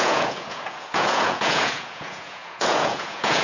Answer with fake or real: fake